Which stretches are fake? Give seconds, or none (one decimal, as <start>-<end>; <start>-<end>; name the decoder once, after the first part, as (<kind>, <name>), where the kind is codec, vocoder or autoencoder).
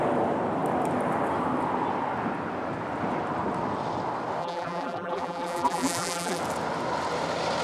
4.4-6.4 (vocoder, BigVGAN v2)